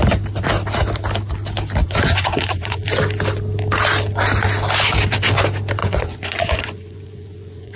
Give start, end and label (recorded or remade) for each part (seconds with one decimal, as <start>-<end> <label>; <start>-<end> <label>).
0.0-1.8 recorded; 1.8-2.8 remade; 2.8-5.8 recorded; 5.8-7.8 remade